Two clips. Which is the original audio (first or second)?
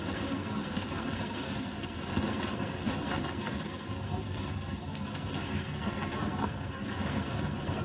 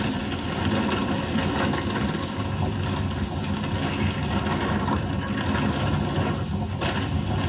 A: second